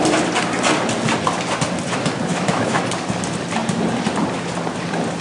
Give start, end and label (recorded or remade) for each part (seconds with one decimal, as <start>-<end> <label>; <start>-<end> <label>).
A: 0.0-2.3 recorded; 2.3-2.8 remade; 2.8-5.2 recorded